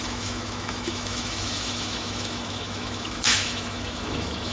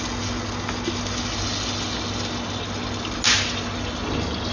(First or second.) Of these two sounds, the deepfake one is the first